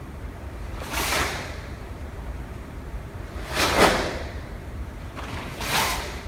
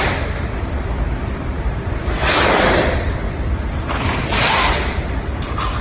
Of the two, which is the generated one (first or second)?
first